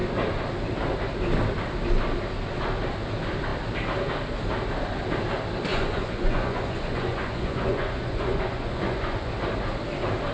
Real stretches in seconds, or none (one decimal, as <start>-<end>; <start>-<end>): 0.0-5.7; 9.3-10.3